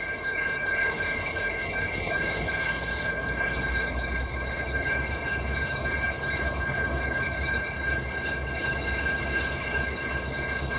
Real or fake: fake